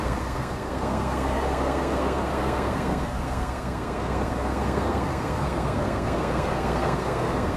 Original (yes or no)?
no